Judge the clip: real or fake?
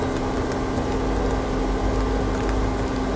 real